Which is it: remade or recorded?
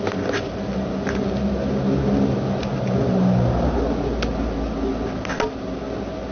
recorded